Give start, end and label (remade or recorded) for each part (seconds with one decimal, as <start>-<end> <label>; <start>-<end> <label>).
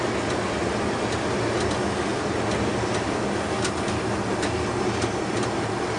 0.0-6.0 recorded